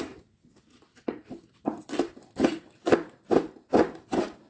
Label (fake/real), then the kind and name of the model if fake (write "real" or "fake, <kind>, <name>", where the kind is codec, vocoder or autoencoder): real